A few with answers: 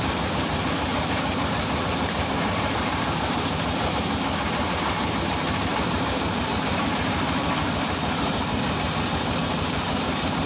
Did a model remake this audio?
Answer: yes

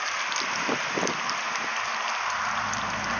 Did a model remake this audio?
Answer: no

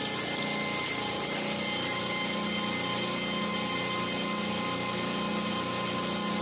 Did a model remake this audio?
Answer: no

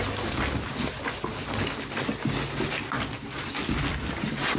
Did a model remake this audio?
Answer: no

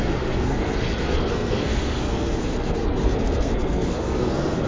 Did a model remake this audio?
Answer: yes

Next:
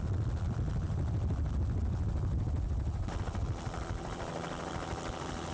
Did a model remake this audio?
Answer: no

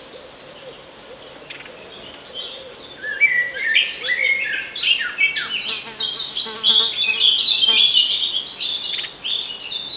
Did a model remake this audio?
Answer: no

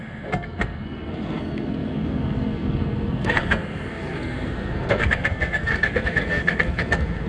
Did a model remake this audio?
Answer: yes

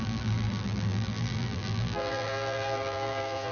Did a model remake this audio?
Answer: yes